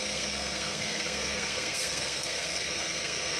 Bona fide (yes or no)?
no